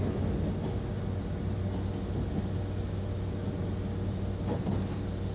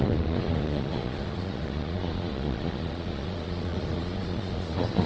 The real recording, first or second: first